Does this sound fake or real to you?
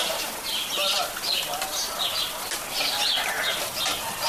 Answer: real